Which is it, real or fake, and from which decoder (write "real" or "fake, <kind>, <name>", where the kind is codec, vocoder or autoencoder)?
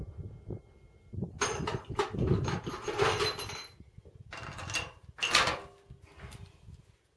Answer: real